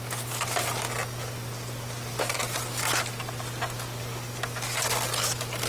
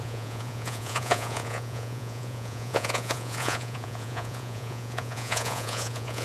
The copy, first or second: second